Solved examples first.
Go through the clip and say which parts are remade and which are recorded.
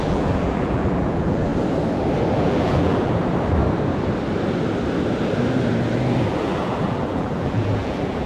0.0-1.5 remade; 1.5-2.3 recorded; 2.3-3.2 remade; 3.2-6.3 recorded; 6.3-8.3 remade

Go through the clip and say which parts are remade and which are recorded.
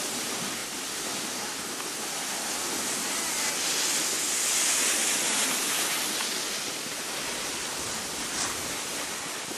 0.0-9.6 recorded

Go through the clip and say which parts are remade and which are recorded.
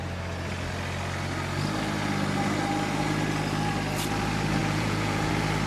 0.0-4.6 recorded; 4.6-5.3 remade; 5.3-5.7 recorded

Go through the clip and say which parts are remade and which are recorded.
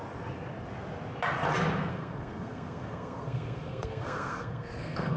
0.0-1.9 recorded; 1.9-5.2 remade